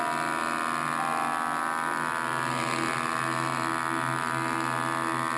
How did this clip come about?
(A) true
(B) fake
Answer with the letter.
A